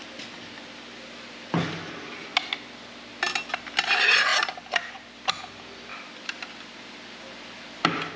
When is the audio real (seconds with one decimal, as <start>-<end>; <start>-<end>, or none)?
0.0-8.2

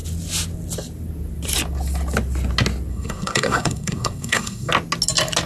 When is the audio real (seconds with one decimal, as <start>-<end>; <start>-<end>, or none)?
0.0-2.9; 4.7-5.5

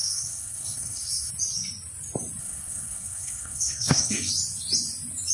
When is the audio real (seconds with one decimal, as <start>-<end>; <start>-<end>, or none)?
1.3-2.4; 4.3-5.3

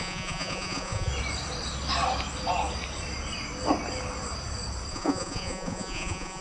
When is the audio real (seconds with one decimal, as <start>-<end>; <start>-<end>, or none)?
1.1-4.9

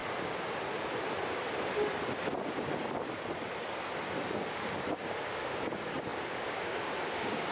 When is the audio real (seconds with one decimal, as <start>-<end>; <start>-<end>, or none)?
0.0-4.5

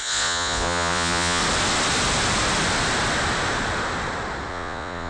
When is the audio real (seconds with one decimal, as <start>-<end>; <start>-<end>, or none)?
1.4-4.5